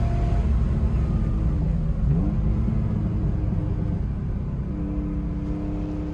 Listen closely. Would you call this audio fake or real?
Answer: real